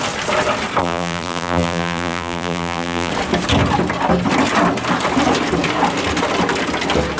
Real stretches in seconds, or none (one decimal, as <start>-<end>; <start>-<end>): 0.0-0.8; 3.1-7.2